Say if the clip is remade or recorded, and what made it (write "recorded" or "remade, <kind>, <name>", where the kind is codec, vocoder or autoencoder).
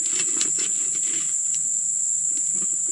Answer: recorded